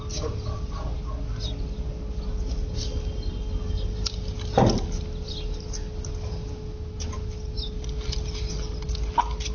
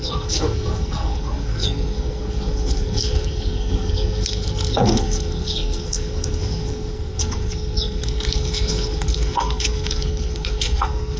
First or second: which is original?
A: first